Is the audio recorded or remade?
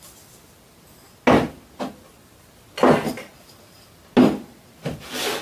recorded